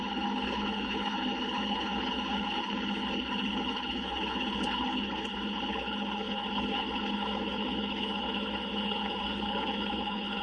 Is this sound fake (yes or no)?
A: yes